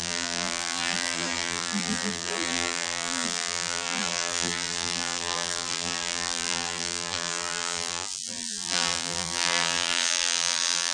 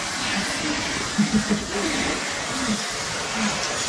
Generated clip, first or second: first